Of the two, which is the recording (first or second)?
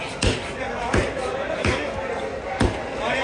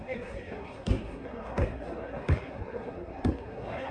first